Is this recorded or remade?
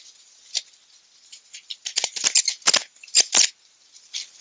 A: recorded